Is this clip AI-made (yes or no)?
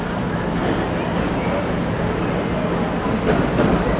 no